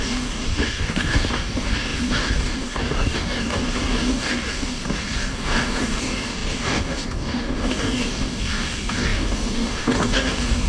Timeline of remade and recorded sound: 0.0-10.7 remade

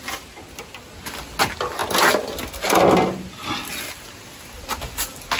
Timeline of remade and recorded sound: 0.0-5.4 recorded